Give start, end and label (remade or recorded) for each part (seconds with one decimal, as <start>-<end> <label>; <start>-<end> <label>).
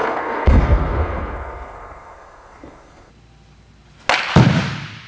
0.0-3.1 remade; 3.1-5.1 recorded